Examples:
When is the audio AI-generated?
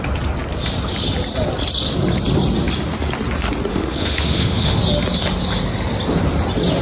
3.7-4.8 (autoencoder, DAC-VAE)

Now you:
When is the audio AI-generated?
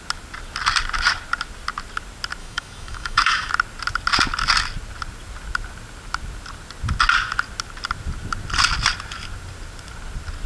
2.4-3.5 (autoencoder, DAC-VAE)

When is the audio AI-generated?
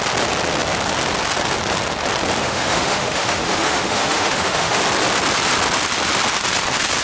2.4-4.8 (autoencoder, DAC-VAE)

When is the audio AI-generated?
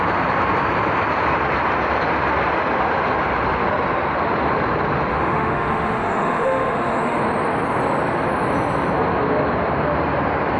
5.1-7.2 (autoencoder, DAC-VAE)